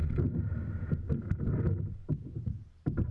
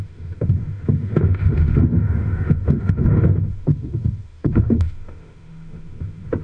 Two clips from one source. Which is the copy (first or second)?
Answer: second